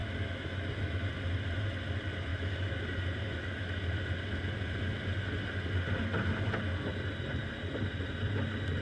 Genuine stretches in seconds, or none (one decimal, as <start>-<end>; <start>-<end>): 1.1-2.3; 2.8-3.2; 3.8-8.8